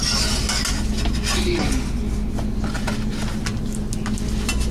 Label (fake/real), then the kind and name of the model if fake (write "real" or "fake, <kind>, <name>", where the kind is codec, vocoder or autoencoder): real